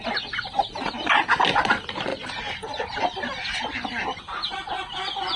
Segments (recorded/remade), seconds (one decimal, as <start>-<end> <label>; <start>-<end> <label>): 0.0-5.4 recorded